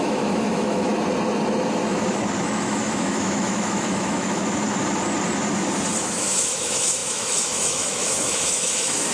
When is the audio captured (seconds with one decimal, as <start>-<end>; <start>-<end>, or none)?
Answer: 0.9-2.6; 4.4-6.0